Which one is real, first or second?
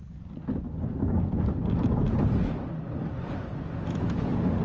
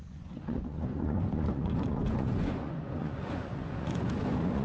first